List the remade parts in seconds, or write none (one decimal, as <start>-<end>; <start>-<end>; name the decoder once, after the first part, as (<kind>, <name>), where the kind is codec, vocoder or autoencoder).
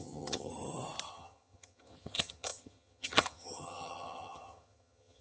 0.0-0.5 (vocoder, HiFi-GAN); 1.1-5.2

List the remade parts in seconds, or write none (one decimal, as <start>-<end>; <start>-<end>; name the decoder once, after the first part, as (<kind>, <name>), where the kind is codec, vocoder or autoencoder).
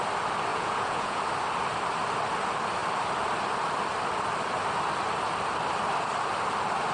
0.5-1.2 (vocoder, Vocos)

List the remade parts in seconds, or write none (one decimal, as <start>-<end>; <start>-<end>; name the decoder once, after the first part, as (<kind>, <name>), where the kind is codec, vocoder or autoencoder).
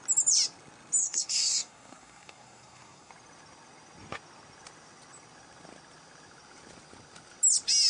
1.0-3.1 (codec, SNAC)